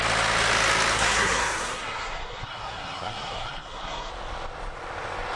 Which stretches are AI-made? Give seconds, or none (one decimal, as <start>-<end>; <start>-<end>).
0.9-4.1